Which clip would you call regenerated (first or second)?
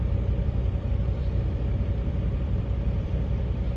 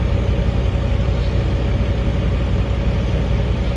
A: first